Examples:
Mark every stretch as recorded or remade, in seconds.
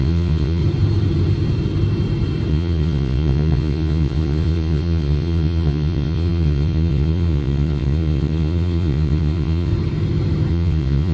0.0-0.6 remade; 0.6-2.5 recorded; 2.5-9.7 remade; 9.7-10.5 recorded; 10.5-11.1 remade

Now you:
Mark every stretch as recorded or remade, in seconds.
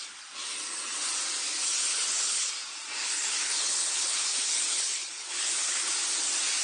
0.0-1.9 recorded; 1.9-2.5 remade; 2.5-3.0 recorded; 3.0-5.9 remade; 5.9-6.6 recorded